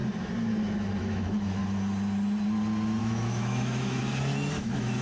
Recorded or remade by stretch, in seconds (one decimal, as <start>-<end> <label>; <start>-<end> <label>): 0.0-1.0 recorded; 1.0-1.6 remade; 1.6-3.0 recorded; 3.0-4.0 remade; 4.0-4.5 recorded; 4.5-5.0 remade